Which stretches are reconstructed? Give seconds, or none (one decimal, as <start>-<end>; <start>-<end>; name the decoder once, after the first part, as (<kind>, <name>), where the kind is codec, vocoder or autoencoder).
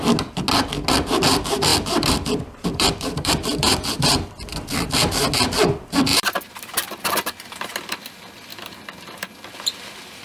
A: 1.7-4.3 (vocoder, BigVGAN v2); 6.1-7.1